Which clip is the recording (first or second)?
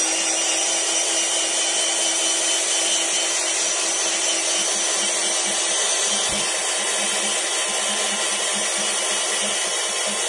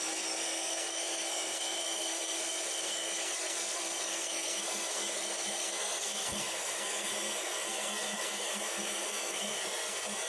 first